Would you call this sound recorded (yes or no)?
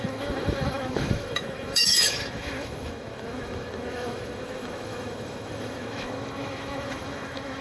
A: no